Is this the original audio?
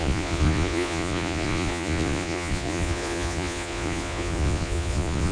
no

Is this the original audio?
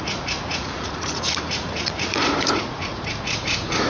no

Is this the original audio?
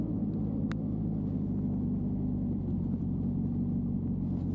yes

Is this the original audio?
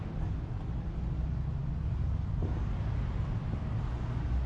yes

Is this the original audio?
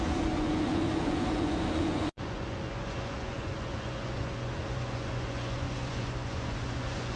no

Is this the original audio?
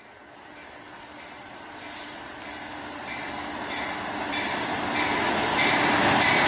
yes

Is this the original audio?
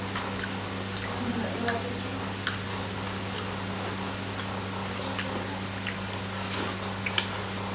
yes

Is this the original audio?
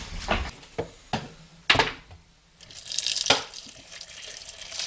yes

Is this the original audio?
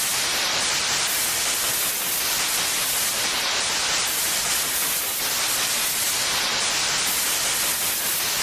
yes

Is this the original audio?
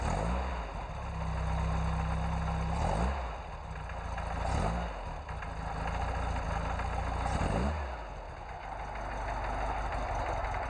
yes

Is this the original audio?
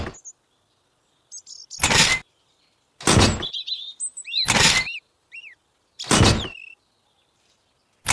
yes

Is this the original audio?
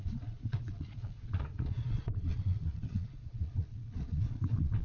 no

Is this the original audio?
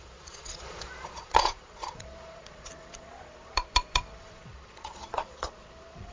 no